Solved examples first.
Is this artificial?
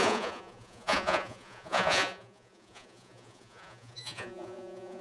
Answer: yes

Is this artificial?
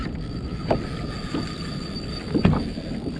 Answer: no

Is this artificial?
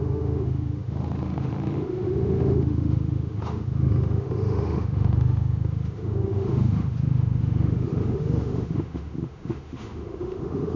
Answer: yes